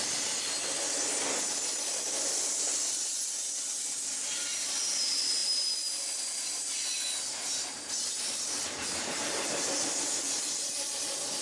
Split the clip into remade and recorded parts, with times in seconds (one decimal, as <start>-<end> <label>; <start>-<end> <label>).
0.0-11.4 recorded